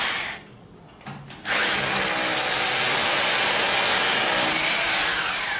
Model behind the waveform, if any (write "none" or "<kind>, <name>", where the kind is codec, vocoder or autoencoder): none